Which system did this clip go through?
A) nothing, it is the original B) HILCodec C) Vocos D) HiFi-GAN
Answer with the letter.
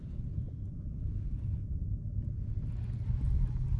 A